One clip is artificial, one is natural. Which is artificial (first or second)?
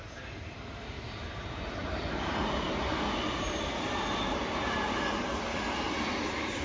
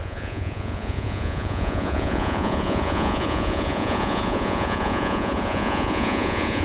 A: second